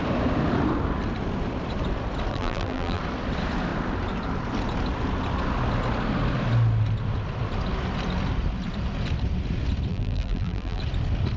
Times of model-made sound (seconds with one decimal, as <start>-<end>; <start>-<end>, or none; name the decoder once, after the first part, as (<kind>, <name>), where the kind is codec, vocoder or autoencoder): 2.3-3.0 (vocoder, BigVGAN v2); 9.9-10.8